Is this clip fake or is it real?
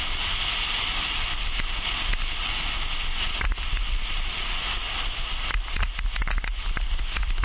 real